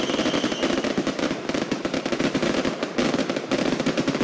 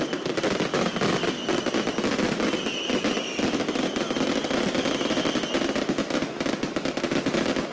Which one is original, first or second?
second